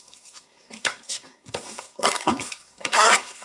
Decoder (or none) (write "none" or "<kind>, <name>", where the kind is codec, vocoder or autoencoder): codec, SNAC